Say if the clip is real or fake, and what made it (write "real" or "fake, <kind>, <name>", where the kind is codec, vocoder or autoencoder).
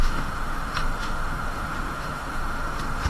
fake, autoencoder, DAC-VAE